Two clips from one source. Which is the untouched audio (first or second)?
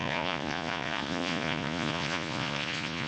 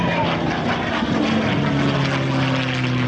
second